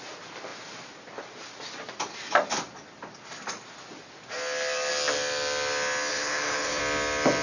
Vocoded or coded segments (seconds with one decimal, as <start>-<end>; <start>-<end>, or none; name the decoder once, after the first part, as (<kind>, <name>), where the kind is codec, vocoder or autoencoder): 6.1-6.8 (codec, HILCodec)